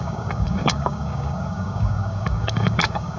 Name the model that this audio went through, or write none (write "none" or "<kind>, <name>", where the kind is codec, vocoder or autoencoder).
codec, DAC